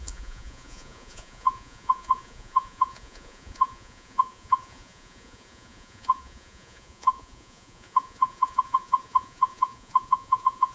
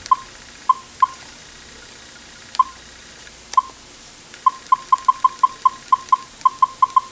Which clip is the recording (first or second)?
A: second